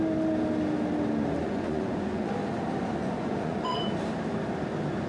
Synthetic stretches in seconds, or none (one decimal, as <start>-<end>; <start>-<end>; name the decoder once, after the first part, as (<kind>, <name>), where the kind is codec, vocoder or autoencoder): 1.4-2.3 (vocoder, Vocos); 3.0-3.8